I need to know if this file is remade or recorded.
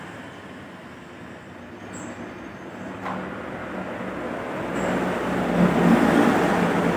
recorded